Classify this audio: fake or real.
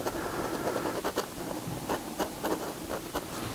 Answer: real